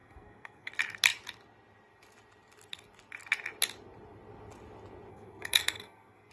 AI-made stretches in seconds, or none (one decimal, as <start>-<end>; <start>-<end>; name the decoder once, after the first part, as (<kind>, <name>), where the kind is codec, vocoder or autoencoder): 0.0-0.7 (codec, SNAC); 5.1-6.3